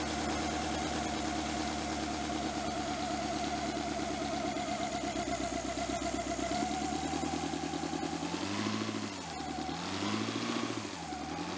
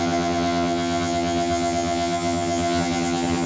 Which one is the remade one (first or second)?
second